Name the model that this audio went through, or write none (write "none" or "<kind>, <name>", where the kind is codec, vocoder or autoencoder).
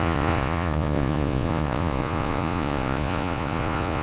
vocoder, Vocos